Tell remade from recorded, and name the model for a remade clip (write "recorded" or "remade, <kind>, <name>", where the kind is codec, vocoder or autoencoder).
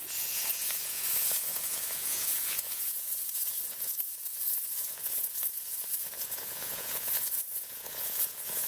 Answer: remade, vocoder, Vocos